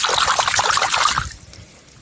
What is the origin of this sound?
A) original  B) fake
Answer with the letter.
A